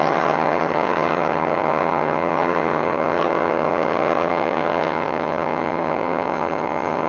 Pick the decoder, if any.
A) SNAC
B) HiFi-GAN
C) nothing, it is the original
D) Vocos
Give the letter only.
B